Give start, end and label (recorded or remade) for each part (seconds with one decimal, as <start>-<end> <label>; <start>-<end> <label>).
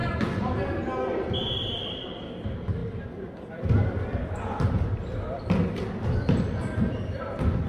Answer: 0.0-1.7 recorded; 1.7-7.7 remade